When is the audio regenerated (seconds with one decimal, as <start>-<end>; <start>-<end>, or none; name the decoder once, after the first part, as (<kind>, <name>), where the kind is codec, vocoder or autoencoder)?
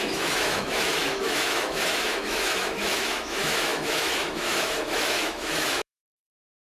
0.0-6.7 (autoencoder, DAC-VAE)